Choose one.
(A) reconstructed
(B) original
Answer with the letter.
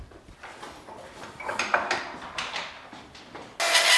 B